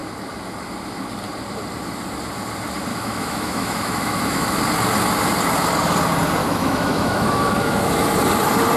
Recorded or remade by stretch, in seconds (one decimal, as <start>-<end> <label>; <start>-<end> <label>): 0.0-2.9 recorded; 2.9-4.6 remade; 4.6-6.4 recorded; 6.4-7.9 remade; 7.9-8.8 recorded